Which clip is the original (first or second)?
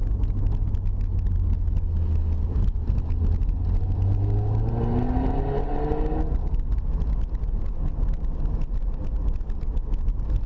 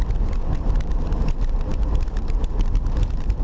first